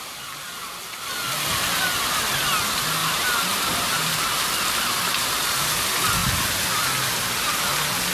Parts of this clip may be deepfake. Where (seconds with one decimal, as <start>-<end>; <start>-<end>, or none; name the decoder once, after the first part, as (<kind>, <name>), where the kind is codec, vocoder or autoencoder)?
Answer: 3.0-5.7 (vocoder, BigVGAN v2)